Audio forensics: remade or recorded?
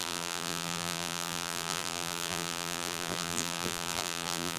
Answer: remade